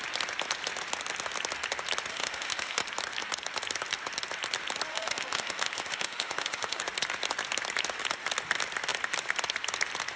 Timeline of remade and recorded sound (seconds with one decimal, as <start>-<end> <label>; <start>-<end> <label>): 0.0-2.1 recorded; 2.1-2.8 remade; 2.8-4.9 recorded; 4.9-6.8 remade; 6.8-10.2 recorded